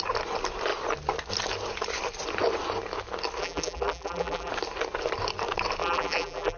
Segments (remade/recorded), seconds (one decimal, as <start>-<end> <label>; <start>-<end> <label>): 0.0-3.4 recorded; 3.4-4.5 remade; 4.5-5.8 recorded; 5.8-6.6 remade